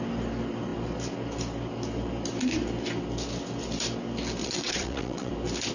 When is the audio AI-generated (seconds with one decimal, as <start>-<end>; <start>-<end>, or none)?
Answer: 4.4-5.3